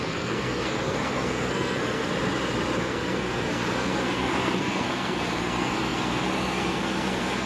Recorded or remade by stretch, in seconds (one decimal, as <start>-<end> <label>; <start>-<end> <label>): 0.0-2.1 remade; 2.1-2.8 recorded; 2.8-7.5 remade